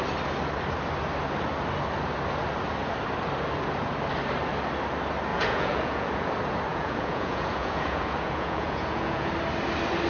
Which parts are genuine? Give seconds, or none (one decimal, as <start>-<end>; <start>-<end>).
0.0-5.3; 6.3-6.7; 9.3-10.1